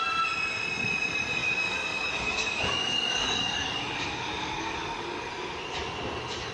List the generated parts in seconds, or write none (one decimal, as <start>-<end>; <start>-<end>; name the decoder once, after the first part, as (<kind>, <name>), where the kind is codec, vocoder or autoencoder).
1.4-5.3 (codec, DAC)